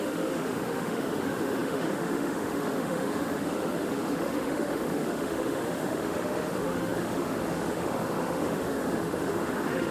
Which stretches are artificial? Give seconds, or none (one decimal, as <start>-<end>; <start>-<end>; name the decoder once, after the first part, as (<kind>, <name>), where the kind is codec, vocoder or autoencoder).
0.0-9.9 (autoencoder, DAC-VAE)